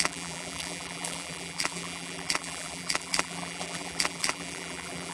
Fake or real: fake